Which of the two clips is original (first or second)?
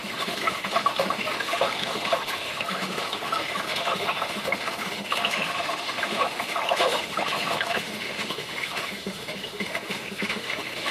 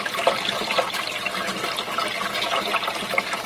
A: second